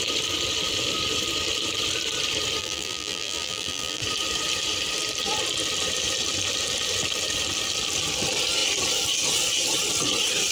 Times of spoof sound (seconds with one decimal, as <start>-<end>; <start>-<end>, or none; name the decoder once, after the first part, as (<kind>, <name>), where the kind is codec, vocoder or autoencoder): 2.6-4.0 (vocoder, BigVGAN v2)